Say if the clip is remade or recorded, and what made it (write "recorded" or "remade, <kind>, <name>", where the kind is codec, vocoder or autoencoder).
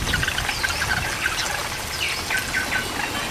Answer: recorded